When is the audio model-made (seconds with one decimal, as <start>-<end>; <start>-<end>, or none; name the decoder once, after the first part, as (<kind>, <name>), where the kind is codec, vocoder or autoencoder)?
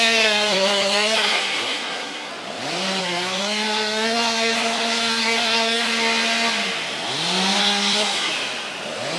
0.0-2.3 (codec, SNAC); 3.0-5.9; 7.6-8.3